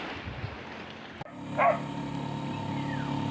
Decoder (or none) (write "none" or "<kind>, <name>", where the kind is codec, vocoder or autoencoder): none